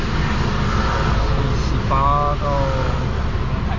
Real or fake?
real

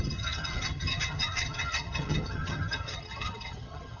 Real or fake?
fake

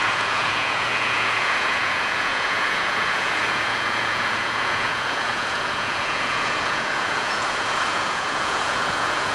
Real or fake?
fake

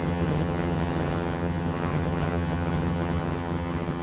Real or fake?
fake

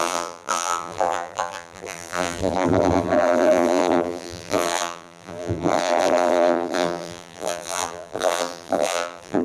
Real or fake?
fake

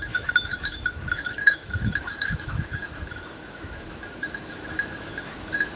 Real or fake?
fake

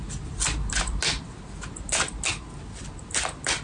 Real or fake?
real